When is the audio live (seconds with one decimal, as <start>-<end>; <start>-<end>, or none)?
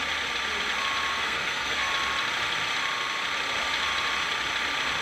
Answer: 0.0-1.1; 1.9-5.0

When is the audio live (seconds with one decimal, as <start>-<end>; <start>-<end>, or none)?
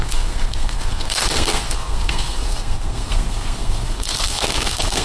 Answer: none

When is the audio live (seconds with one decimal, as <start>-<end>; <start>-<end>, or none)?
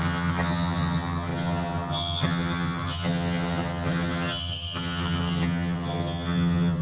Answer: none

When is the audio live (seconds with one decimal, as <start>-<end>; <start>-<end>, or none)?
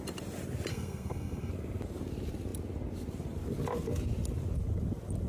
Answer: 0.0-0.7; 1.5-5.3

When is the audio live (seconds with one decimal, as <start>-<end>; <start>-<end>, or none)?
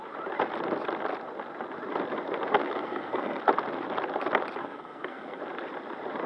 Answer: 0.0-2.6; 3.4-4.6; 5.4-6.3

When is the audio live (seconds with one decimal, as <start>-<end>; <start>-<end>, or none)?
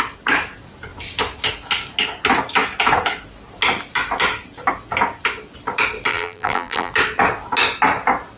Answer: 0.0-6.1; 6.9-8.4